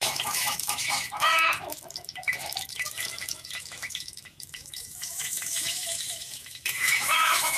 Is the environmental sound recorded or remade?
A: remade